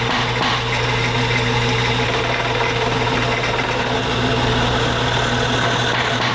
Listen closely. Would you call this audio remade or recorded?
recorded